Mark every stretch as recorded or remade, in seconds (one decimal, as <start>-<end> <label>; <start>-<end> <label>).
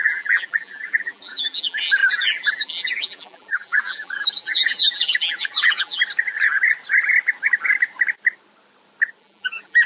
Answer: 0.0-6.0 remade; 6.0-9.2 recorded; 9.2-9.9 remade